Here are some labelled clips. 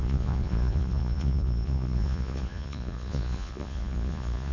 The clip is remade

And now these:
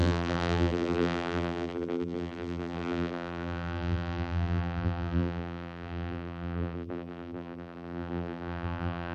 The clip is remade